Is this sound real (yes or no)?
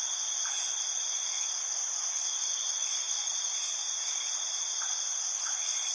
no